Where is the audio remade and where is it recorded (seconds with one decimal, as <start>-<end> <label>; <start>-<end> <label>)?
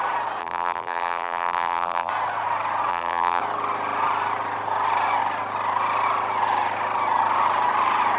0.0-0.4 recorded; 0.4-2.1 remade; 2.1-2.9 recorded; 2.9-3.4 remade; 3.4-8.2 recorded